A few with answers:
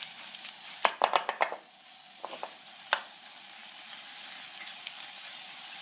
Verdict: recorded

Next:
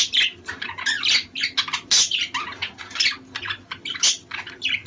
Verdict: recorded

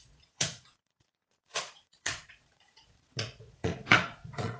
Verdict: remade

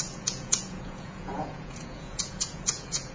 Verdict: remade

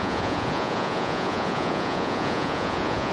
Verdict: remade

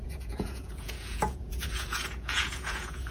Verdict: remade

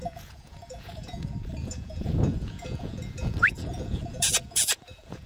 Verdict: remade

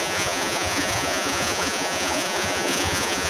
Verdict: remade